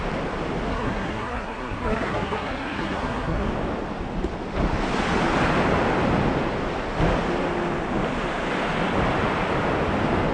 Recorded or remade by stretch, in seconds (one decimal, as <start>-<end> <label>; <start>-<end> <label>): 0.0-0.7 recorded; 0.7-3.5 remade; 3.5-10.3 recorded